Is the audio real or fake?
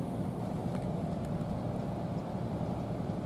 fake